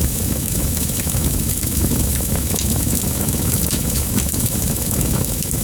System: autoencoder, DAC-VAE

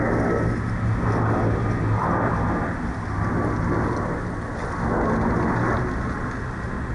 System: none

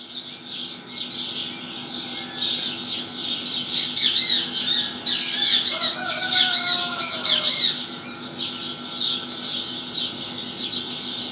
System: none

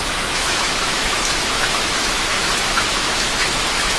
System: autoencoder, DAC-VAE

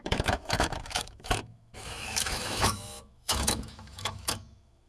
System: autoencoder, DAC-VAE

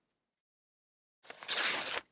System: none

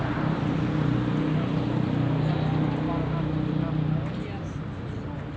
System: none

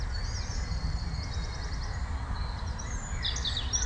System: none